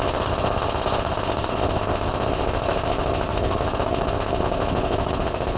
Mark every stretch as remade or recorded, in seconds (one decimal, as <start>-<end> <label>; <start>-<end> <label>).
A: 0.0-5.6 remade